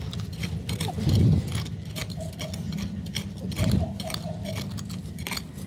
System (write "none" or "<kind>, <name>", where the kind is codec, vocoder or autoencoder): none